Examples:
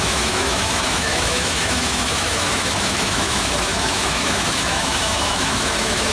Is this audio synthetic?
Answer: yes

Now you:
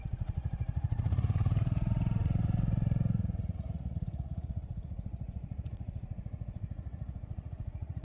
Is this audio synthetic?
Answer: yes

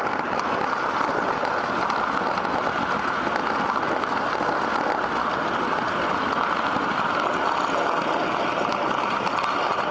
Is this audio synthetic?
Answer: no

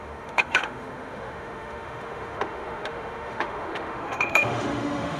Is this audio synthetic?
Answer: yes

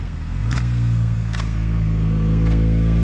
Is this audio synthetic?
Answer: yes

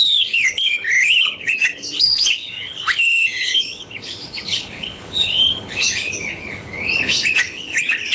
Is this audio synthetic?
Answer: yes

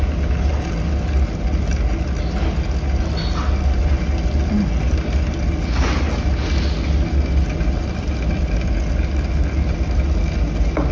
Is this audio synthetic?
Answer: no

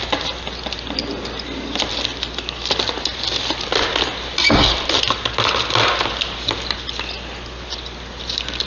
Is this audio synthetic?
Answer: no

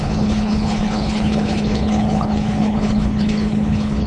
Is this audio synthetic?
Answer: yes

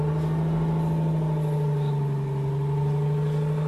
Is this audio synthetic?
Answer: no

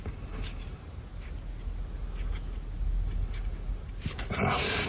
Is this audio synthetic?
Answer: no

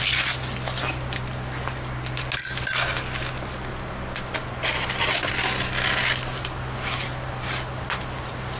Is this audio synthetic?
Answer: no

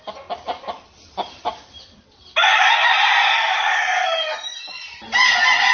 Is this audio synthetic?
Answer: no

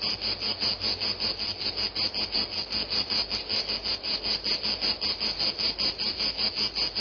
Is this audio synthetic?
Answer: no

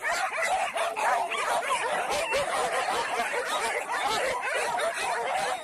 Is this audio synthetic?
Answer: no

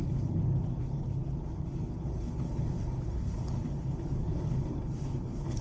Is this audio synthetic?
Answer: yes